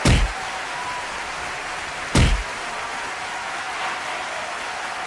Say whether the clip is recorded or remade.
recorded